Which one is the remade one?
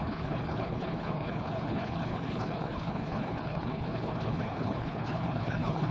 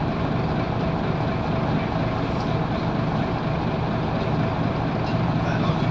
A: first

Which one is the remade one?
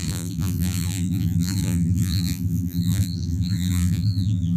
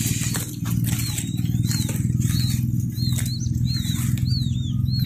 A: first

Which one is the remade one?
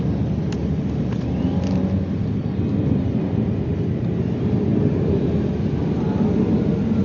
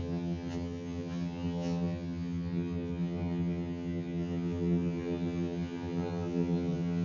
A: second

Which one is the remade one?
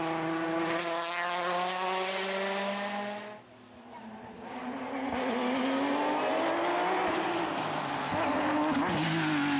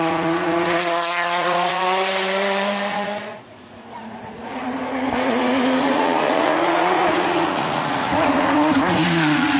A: second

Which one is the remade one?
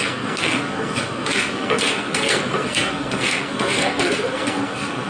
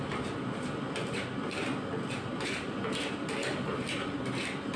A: first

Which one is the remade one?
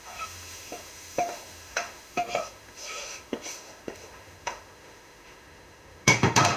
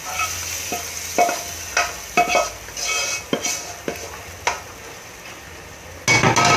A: first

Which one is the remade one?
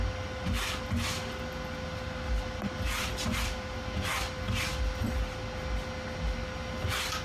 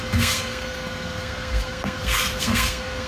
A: second